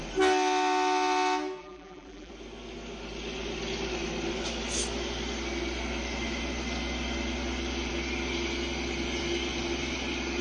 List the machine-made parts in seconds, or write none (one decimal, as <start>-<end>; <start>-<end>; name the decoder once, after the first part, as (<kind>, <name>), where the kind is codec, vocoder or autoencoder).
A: 1.6-2.3 (vocoder, BigVGAN v2)